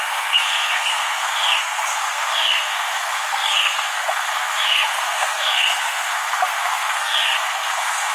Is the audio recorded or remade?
remade